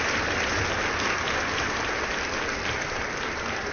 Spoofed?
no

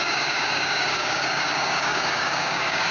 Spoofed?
yes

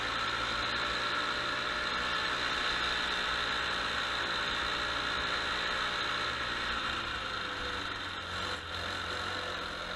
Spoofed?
no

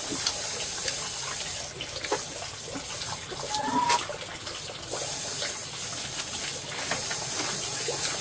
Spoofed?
no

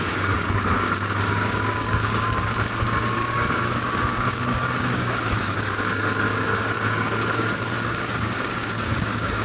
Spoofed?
yes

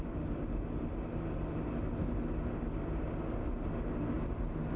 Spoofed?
no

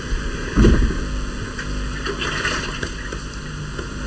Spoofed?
no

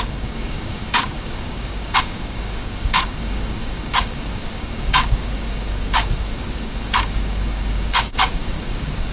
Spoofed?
yes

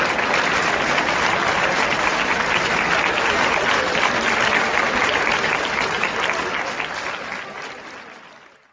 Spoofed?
no